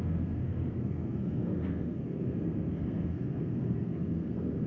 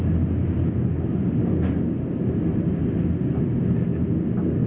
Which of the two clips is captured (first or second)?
second